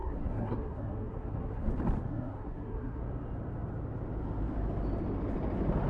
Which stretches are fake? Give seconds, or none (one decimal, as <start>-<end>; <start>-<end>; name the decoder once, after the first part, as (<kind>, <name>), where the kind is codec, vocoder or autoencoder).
0.0-1.7 (codec, SNAC); 2.1-3.0